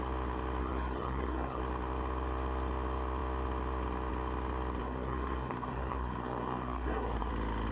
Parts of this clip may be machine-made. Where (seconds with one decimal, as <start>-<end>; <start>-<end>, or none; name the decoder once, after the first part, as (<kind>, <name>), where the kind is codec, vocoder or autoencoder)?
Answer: 0.6-1.6 (codec, SNAC); 4.8-7.3